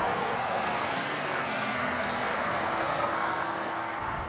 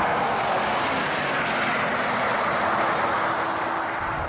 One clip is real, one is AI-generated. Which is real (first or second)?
second